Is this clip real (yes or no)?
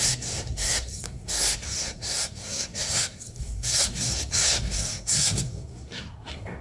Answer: no